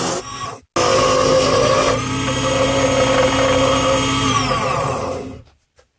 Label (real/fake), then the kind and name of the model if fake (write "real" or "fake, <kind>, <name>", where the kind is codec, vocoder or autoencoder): real